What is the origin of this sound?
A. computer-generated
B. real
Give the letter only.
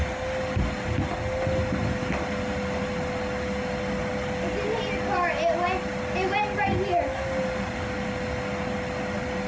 B